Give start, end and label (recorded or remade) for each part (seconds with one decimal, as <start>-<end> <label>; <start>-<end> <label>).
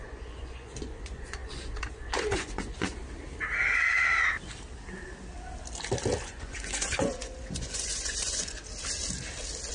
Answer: 0.0-3.0 remade; 3.0-6.2 recorded; 6.2-8.6 remade; 8.6-9.7 recorded